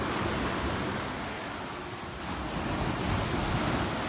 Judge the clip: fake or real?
real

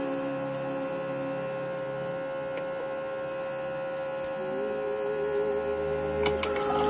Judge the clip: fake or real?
real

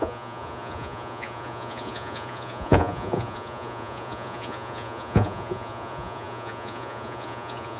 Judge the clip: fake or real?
fake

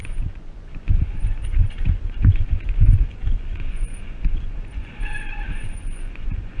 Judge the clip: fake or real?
fake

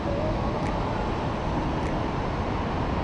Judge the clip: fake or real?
real